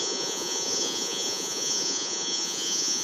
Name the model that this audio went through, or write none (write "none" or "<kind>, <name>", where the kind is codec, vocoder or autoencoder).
vocoder, Vocos